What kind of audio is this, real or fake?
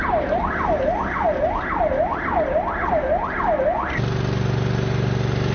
real